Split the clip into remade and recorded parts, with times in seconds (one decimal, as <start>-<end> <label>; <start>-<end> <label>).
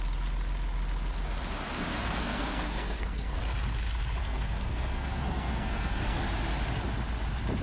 0.0-1.9 recorded; 1.9-3.4 remade; 3.4-4.2 recorded; 4.2-6.2 remade; 6.2-7.6 recorded